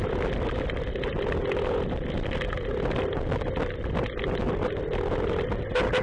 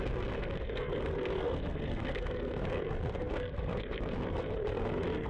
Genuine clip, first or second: first